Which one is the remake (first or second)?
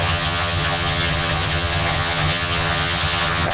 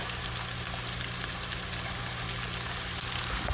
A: first